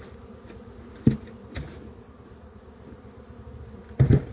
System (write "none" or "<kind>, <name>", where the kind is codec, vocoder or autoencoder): none